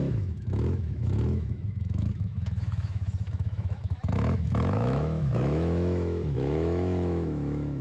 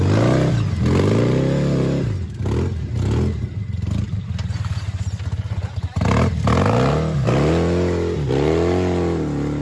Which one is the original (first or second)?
second